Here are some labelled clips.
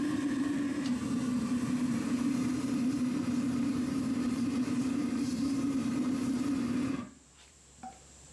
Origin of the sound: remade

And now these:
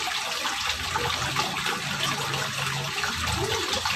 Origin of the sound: recorded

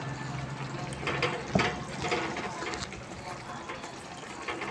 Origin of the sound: recorded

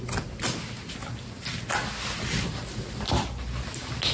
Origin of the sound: recorded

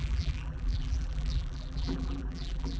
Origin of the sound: remade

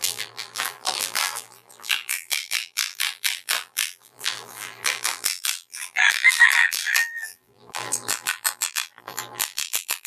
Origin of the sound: remade